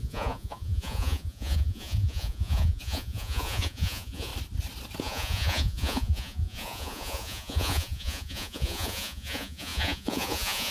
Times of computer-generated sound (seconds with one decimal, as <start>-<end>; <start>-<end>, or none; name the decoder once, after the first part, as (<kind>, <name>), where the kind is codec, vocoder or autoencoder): 0.0-4.3 (vocoder, Vocos); 5.0-10.7